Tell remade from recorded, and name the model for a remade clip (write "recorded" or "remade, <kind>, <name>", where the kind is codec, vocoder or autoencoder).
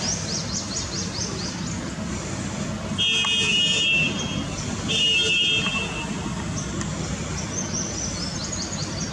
recorded